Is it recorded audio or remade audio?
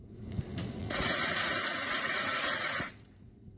remade